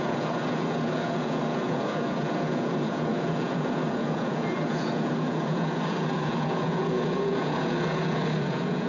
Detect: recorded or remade remade